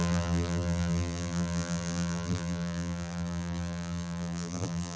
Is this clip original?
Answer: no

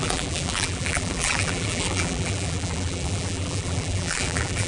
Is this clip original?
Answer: no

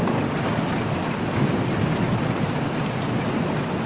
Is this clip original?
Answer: no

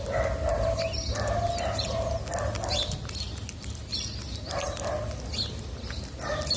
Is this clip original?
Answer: yes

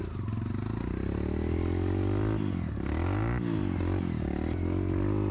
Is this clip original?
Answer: yes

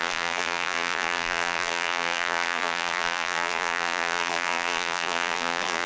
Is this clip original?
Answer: no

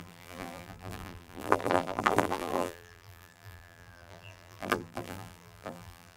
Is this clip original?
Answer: no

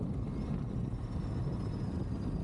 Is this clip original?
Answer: yes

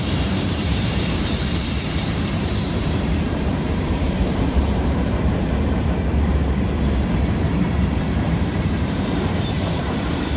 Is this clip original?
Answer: no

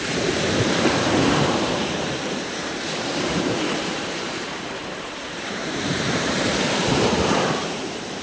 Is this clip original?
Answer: no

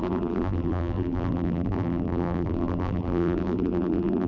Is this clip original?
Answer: no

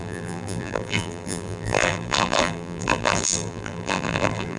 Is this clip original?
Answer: no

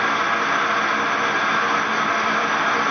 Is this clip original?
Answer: no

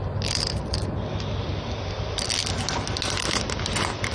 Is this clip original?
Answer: yes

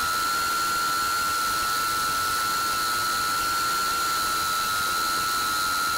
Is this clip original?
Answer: yes